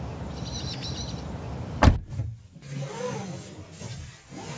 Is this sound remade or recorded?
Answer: recorded